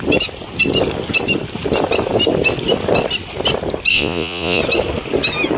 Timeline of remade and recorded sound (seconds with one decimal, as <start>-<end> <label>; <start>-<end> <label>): 0.0-3.9 recorded; 3.9-4.6 remade; 4.6-5.6 recorded